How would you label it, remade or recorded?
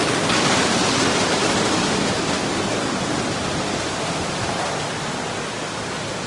recorded